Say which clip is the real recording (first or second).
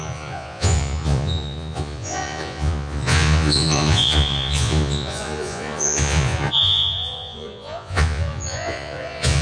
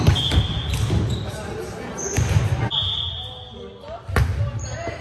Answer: second